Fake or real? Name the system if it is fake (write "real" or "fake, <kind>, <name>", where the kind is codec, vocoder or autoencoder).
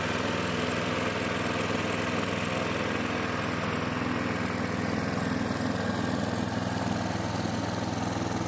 real